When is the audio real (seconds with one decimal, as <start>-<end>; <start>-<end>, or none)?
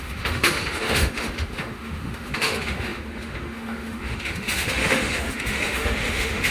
none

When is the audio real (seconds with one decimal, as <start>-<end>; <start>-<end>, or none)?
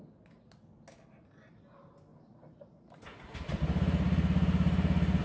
0.0-5.2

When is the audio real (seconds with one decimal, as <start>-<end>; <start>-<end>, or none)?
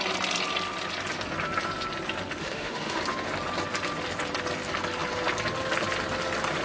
0.0-2.4; 3.0-6.6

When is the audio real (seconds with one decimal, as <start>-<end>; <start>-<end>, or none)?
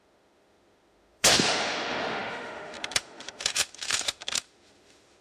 none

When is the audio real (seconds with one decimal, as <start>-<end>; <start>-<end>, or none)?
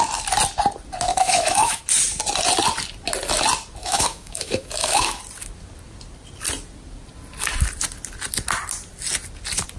0.0-1.1; 1.8-3.8; 5.2-9.8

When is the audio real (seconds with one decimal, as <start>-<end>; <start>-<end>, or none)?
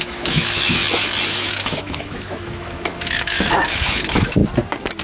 0.8-1.3; 4.4-5.0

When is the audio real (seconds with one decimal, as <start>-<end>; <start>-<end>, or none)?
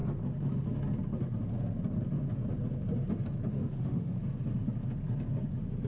0.0-3.5; 4.2-5.9